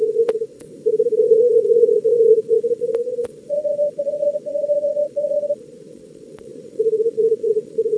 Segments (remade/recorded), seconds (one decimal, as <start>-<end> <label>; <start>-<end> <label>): 0.0-0.7 remade; 0.7-1.2 recorded; 1.2-8.0 remade